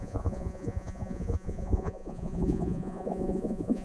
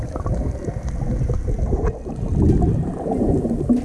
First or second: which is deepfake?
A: first